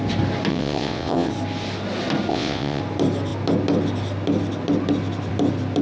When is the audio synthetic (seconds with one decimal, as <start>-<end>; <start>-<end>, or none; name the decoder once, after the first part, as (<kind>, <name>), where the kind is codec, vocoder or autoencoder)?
0.5-1.3 (vocoder, WaveNeXt); 2.3-2.8

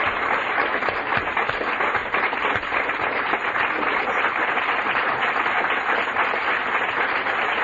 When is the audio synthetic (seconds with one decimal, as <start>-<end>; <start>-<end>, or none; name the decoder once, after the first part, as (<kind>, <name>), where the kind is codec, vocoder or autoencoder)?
2.0-6.6 (vocoder, BigVGAN v2)